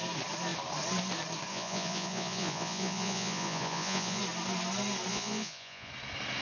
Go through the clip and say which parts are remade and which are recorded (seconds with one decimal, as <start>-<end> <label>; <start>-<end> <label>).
0.0-1.5 recorded; 1.5-4.2 remade; 4.2-5.1 recorded; 5.1-5.9 remade; 5.9-6.4 recorded